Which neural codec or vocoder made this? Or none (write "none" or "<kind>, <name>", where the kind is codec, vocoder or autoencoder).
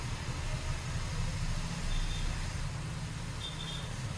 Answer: none